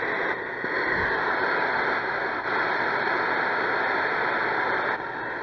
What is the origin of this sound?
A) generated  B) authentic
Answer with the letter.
A